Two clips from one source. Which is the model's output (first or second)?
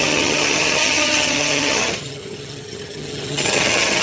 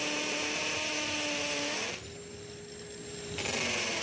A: first